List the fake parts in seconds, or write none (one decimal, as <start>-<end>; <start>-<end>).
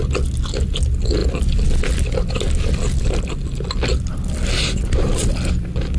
none